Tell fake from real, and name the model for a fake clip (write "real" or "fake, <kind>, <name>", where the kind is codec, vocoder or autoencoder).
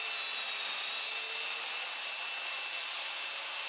real